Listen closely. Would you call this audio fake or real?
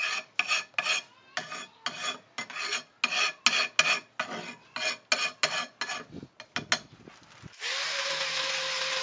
real